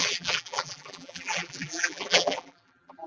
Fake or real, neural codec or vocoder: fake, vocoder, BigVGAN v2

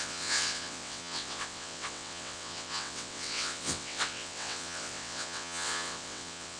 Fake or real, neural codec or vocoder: fake, vocoder, WaveNeXt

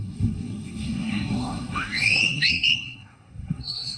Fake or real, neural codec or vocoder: fake, codec, SNAC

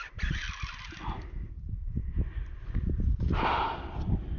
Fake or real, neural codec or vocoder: real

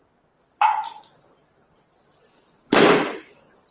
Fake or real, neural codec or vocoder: real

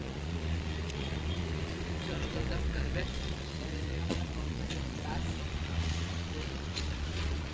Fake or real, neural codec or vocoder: fake, vocoder, Vocos